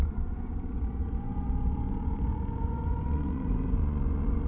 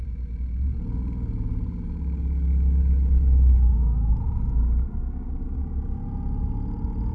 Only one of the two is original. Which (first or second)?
second